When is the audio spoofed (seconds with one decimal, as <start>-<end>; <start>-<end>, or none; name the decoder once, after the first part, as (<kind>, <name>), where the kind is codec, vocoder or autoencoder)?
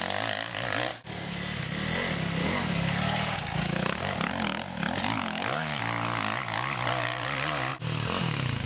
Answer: 0.9-1.4 (codec, DAC); 2.4-4.3; 5.2-5.8; 7.7-8.7